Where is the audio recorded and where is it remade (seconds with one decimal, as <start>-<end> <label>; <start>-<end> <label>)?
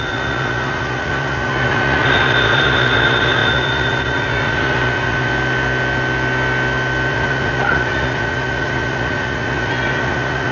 0.0-5.3 remade; 5.3-7.1 recorded; 7.1-10.5 remade